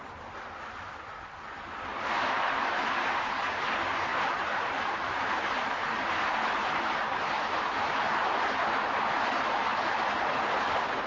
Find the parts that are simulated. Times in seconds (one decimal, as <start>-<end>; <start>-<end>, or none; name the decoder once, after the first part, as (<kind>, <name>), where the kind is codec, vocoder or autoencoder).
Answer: 1.9-3.6 (vocoder, BigVGAN v2); 4.1-6.8